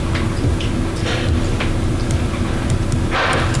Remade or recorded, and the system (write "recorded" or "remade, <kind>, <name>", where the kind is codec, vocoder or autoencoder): recorded